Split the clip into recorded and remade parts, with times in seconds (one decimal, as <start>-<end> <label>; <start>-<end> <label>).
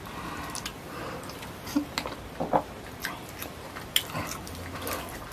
0.0-0.7 recorded; 0.7-3.9 remade; 3.9-5.3 recorded